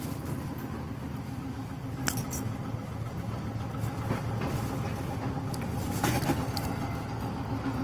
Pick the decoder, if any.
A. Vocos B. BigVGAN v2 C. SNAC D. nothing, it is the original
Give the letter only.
D